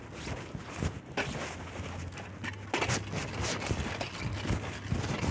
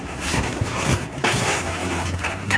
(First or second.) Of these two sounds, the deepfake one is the second